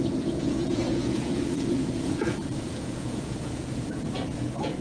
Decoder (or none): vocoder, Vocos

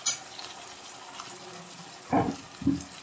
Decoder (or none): none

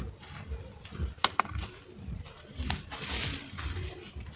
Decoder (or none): none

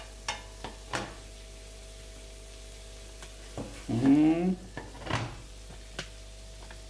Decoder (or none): none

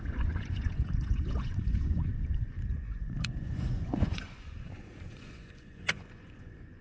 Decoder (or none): vocoder, Vocos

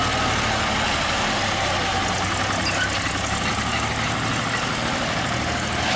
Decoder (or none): none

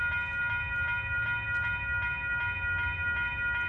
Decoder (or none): none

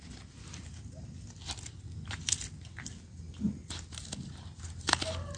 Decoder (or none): none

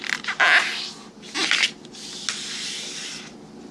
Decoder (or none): none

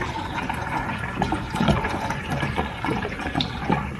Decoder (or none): vocoder, Vocos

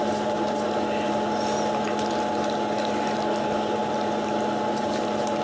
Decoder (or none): none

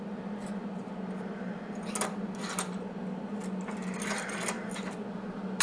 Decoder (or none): none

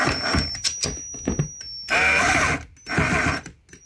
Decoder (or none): none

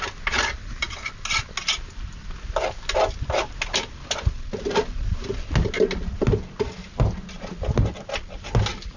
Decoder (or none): none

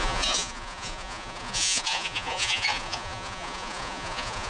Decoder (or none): vocoder, Vocos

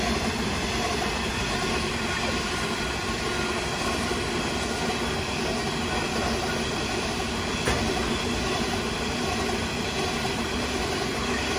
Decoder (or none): none